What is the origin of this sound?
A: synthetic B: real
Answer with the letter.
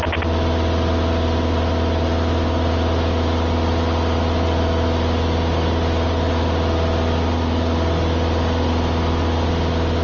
B